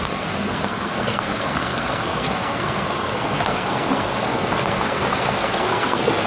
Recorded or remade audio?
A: remade